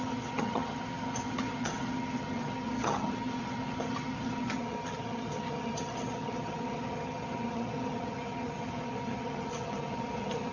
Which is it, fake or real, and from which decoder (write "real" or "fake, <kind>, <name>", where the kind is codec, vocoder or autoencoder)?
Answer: fake, vocoder, HiFi-GAN